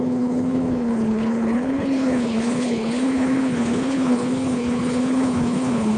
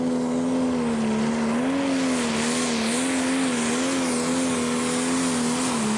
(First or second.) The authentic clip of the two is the second